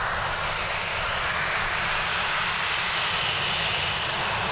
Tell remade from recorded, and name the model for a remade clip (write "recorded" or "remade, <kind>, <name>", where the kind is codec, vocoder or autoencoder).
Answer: recorded